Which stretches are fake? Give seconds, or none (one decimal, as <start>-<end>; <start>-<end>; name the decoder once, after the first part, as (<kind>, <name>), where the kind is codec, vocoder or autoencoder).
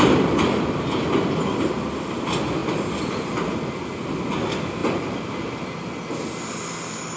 none